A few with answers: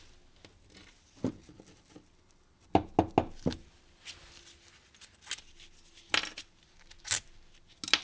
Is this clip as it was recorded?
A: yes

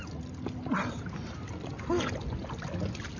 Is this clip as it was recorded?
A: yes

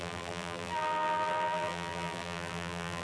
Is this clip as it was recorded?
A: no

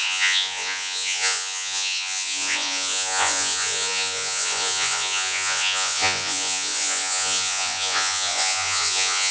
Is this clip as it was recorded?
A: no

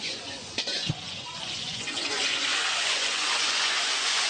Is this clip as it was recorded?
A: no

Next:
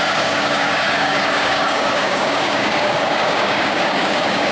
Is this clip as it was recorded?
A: no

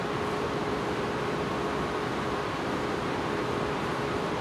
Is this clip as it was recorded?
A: no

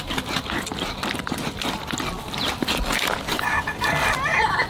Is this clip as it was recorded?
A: yes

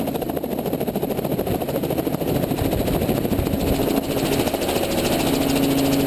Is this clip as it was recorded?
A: yes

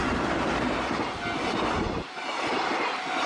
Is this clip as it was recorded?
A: yes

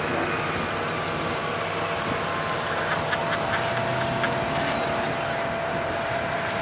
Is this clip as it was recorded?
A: yes